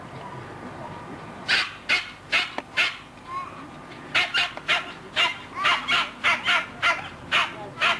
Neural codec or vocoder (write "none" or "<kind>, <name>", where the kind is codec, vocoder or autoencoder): none